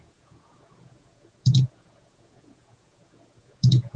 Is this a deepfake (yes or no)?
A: yes